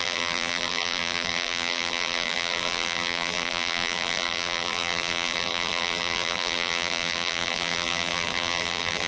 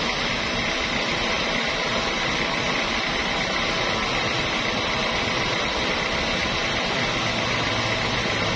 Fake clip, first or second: first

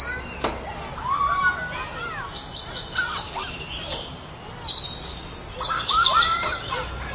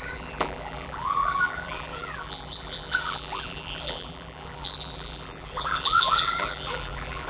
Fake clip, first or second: second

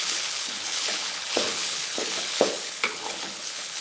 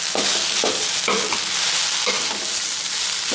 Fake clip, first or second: first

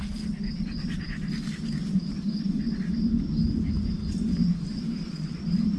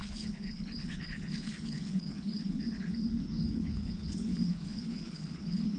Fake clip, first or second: second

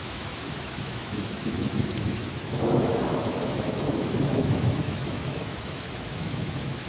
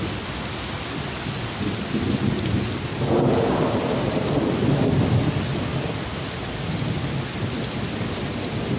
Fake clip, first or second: first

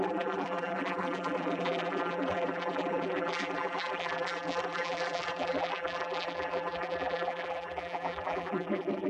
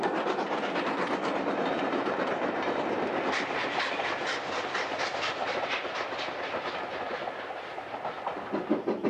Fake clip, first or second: first